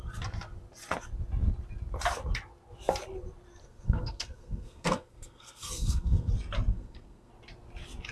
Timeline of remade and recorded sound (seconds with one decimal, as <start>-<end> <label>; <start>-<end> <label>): 0.0-3.6 recorded; 3.6-6.3 remade; 6.3-6.7 recorded; 6.7-7.3 remade; 7.3-8.1 recorded